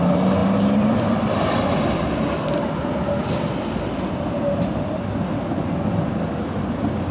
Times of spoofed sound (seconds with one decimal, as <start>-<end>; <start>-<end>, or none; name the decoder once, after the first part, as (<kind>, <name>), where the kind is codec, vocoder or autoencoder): none